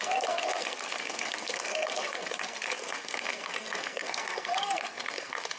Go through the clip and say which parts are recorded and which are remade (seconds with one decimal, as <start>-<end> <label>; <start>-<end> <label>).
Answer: 0.0-5.6 remade